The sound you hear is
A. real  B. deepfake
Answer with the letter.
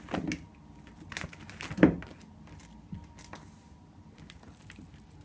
A